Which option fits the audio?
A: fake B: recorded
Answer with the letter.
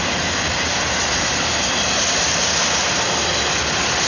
B